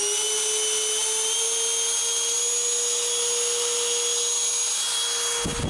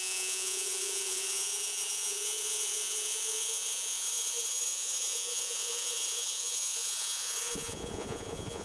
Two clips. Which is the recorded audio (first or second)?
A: first